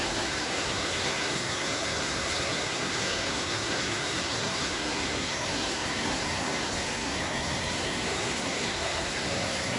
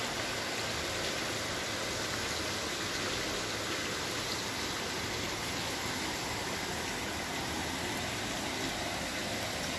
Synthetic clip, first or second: first